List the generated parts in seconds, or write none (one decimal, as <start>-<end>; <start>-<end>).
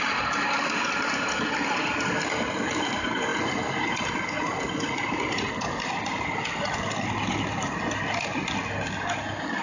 none